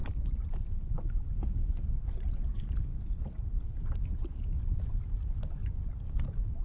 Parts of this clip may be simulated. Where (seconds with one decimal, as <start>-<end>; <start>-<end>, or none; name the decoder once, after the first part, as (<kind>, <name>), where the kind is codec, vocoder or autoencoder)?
0.0-1.1 (vocoder, BigVGAN v2); 2.9-4.8; 5.6-6.6